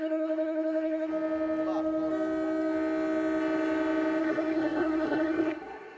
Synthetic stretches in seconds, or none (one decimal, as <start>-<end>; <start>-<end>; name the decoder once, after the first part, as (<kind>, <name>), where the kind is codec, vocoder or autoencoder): 0.0-1.1 (codec, SNAC); 4.2-6.0